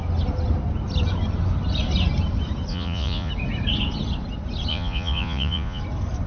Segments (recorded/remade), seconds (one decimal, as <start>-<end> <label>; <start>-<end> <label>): 0.0-2.7 recorded; 2.7-3.3 remade; 3.3-4.7 recorded; 4.7-5.8 remade; 5.8-6.3 recorded